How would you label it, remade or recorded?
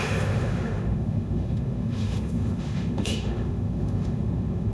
remade